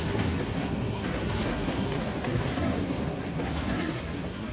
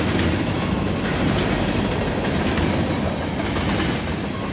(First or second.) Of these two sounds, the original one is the second